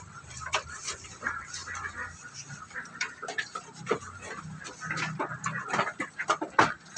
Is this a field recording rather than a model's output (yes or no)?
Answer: yes